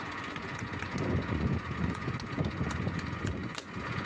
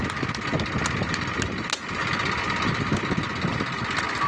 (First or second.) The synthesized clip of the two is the first